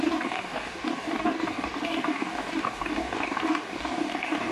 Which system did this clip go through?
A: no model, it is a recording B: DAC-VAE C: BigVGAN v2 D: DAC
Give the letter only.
D